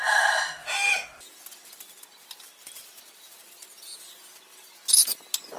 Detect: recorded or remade recorded